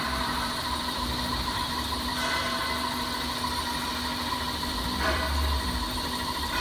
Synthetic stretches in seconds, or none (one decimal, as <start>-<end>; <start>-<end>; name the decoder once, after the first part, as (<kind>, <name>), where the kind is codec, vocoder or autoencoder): 0.0-2.1 (vocoder, BigVGAN v2); 4.3-6.6